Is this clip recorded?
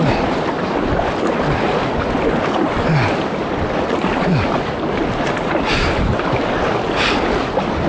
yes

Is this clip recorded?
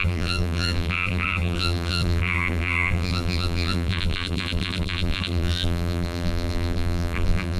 no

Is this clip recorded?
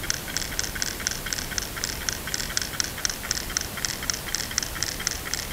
yes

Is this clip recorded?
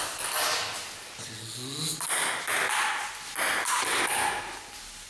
yes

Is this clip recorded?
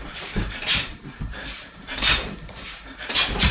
no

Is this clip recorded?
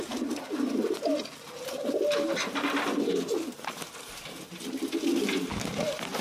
yes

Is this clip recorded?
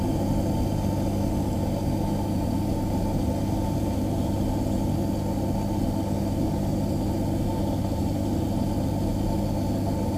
yes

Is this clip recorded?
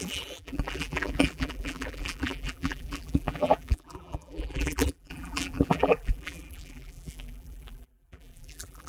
no